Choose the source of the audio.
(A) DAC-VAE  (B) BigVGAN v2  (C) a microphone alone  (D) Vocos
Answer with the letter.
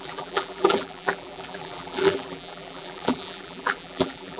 B